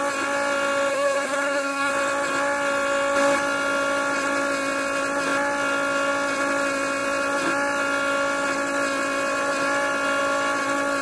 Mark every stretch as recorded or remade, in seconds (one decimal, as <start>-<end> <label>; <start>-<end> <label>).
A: 0.0-0.9 recorded; 0.9-1.9 remade; 1.9-11.0 recorded